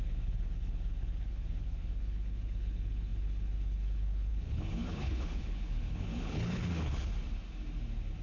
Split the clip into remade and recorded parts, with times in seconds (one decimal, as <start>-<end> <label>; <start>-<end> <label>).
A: 0.0-7.1 remade; 7.1-8.2 recorded